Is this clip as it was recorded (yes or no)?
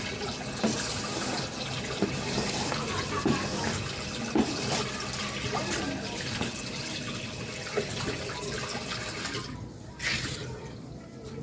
yes